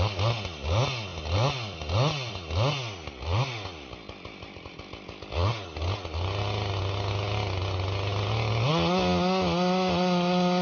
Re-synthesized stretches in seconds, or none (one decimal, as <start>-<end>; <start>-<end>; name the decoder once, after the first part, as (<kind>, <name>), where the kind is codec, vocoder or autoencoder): none